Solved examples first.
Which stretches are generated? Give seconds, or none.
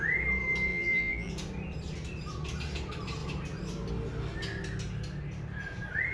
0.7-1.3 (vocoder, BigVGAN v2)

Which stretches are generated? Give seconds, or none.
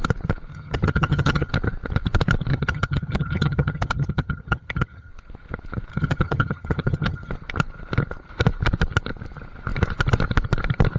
0.5-1.5 (vocoder, HiFi-GAN); 2.5-5.1; 5.9-7.3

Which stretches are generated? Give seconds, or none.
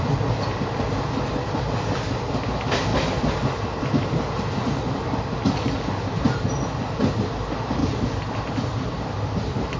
none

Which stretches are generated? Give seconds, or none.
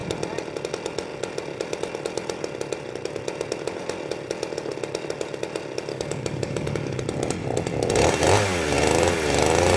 5.9-7.0 (codec, DAC)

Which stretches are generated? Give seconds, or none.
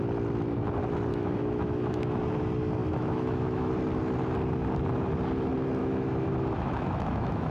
1.1-2.2 (autoencoder, DAC-VAE); 2.8-3.7; 5.8-7.5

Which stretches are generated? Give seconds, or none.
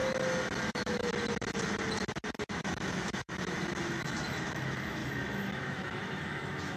0.7-1.1 (autoencoder, DAC-VAE); 2.6-6.8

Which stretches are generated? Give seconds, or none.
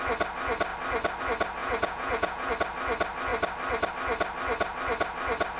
1.6-2.5 (vocoder, Vocos)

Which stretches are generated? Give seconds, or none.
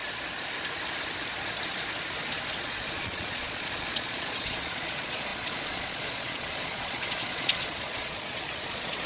2.6-9.1 (vocoder, Vocos)